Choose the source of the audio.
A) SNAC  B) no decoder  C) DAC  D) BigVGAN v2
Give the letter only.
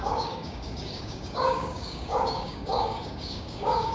C